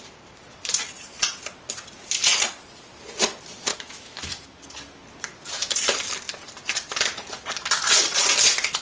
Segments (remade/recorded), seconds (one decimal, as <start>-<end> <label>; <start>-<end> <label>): 0.0-3.7 recorded; 3.7-4.6 remade; 4.6-8.8 recorded